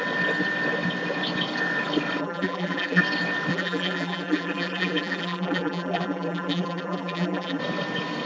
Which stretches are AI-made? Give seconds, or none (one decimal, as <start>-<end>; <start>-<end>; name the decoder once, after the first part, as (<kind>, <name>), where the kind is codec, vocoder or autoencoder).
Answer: 2.2-3.0 (vocoder, BigVGAN v2); 3.5-7.6